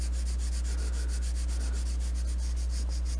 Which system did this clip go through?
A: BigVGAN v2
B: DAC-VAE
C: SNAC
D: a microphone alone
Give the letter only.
D